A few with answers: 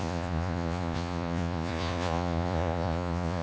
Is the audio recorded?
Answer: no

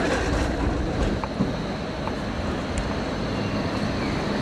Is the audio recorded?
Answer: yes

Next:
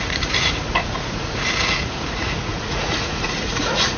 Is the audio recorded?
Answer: no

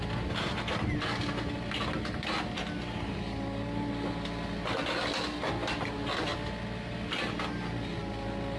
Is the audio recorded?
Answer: yes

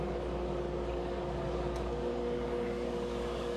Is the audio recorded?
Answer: no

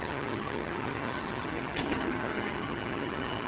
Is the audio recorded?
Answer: no